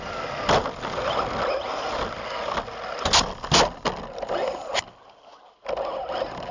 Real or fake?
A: real